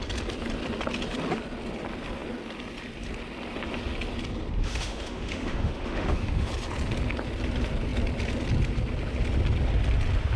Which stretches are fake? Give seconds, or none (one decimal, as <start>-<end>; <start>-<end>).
4.6-6.5